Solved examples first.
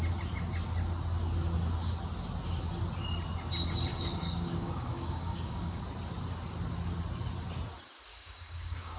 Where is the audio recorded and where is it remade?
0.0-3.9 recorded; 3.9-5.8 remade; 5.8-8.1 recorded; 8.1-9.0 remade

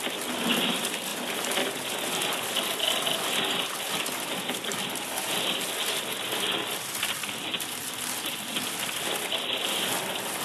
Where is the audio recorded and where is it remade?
0.0-10.4 recorded

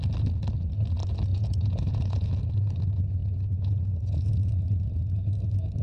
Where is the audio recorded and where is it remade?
0.0-1.3 recorded; 1.3-2.3 remade; 2.3-3.2 recorded; 3.2-4.3 remade; 4.3-5.8 recorded

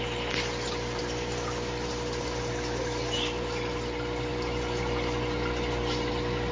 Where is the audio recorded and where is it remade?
0.0-6.5 recorded

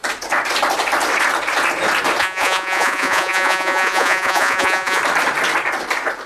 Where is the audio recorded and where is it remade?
0.0-2.2 recorded; 2.2-5.0 remade; 5.0-6.3 recorded

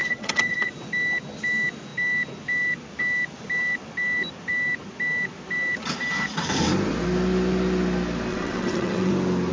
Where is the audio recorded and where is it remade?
0.0-0.7 remade; 0.7-8.3 recorded; 8.3-9.1 remade; 9.1-9.5 recorded